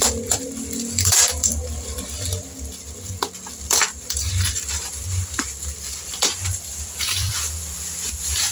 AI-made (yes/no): yes